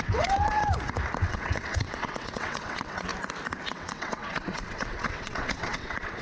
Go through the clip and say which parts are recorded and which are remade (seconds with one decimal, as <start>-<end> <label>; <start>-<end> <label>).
0.0-0.6 remade; 0.6-1.2 recorded; 1.2-3.1 remade; 3.1-3.7 recorded; 3.7-6.2 remade